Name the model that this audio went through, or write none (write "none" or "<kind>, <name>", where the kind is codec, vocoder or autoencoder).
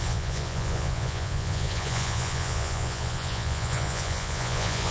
vocoder, Vocos